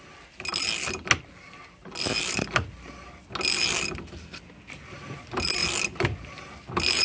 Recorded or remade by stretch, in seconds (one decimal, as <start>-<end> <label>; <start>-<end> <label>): 0.0-7.0 recorded